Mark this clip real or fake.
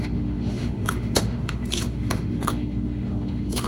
fake